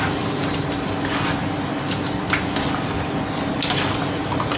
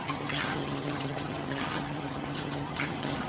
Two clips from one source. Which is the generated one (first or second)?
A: second